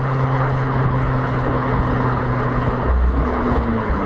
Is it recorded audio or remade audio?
remade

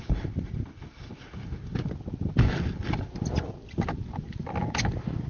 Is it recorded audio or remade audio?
recorded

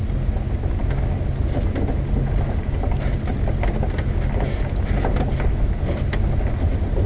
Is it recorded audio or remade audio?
recorded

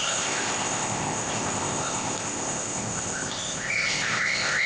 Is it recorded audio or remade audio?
remade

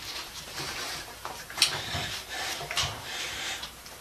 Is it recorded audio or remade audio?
remade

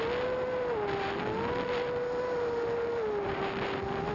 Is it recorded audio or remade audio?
recorded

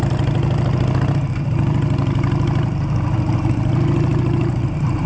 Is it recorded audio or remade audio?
recorded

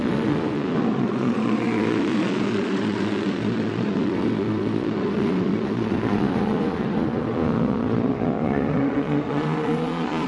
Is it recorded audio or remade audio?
remade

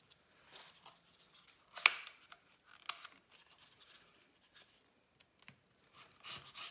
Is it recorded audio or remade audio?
recorded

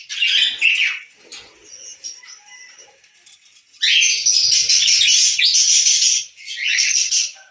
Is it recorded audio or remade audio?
recorded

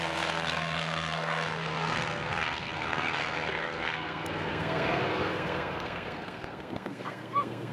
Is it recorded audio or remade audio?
remade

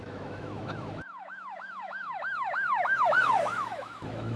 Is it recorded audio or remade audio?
remade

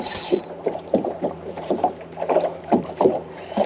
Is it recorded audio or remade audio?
remade